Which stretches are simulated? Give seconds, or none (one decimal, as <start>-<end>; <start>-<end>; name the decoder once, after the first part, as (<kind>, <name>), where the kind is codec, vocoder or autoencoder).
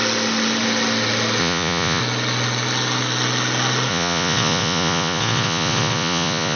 1.4-2.0 (vocoder, Vocos); 3.9-6.6